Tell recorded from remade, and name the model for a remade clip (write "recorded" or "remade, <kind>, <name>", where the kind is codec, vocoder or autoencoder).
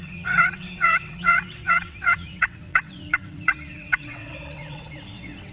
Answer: remade, vocoder, WaveNeXt